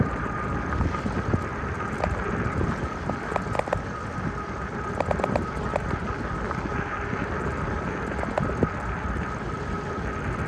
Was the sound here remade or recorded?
recorded